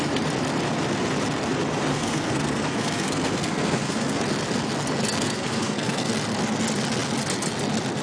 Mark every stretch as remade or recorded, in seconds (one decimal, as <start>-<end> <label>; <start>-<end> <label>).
0.0-1.9 recorded; 1.9-4.2 remade; 4.2-5.2 recorded; 5.2-6.1 remade; 6.1-8.0 recorded